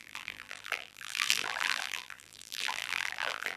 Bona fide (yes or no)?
no